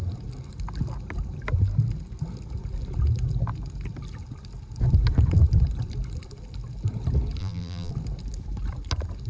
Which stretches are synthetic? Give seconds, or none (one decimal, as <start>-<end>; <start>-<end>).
7.4-7.9